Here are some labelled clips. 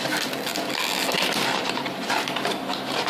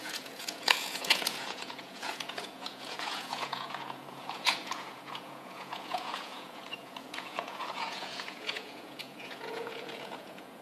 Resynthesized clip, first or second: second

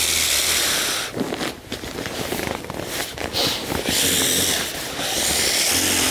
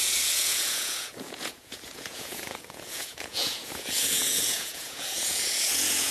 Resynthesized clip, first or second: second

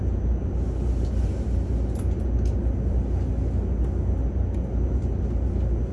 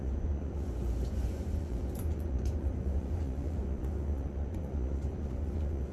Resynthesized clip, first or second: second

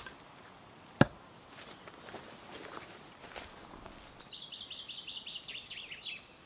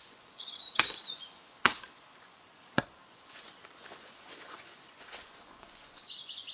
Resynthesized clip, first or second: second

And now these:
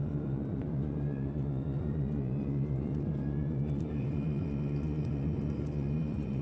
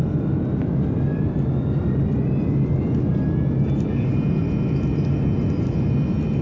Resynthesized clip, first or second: first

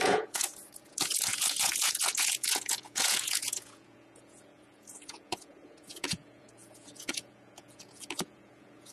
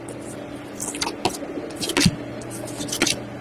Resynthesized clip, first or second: first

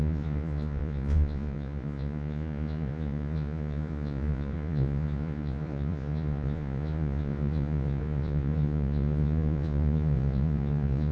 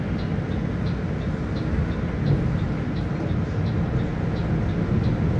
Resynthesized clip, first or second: first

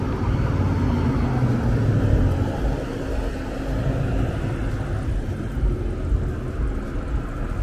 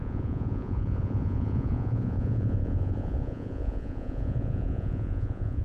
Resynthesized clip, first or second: second